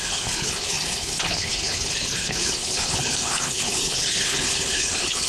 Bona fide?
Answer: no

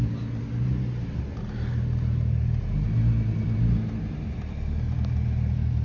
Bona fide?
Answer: yes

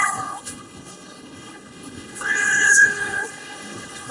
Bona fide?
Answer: no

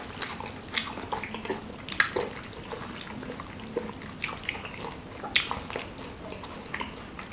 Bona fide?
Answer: yes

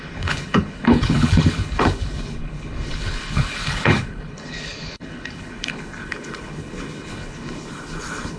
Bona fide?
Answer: no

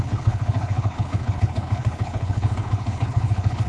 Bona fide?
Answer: no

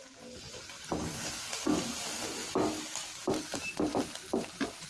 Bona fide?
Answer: yes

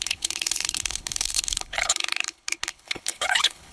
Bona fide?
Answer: no